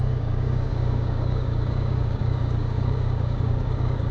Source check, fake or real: fake